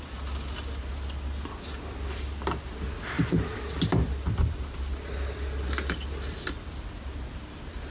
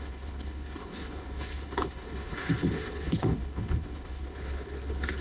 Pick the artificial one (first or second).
second